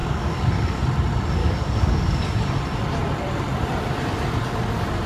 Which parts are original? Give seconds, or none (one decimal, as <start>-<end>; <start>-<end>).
0.8-1.4; 2.2-5.1